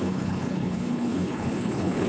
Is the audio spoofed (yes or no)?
yes